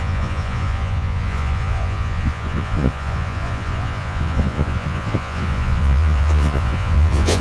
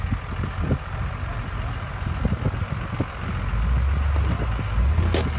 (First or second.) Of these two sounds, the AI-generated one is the first